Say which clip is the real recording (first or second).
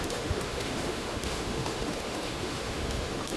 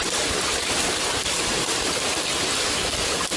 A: second